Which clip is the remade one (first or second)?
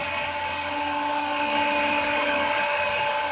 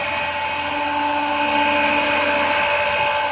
first